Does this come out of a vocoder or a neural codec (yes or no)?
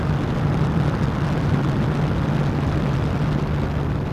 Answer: no